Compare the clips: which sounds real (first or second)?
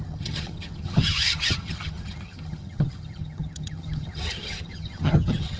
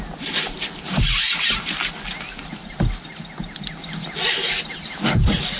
second